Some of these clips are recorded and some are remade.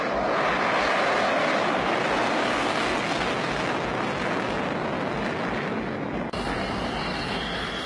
recorded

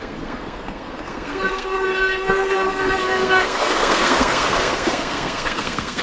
remade